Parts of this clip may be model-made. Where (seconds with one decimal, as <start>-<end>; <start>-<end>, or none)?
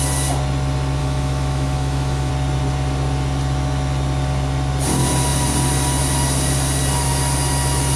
1.0-2.3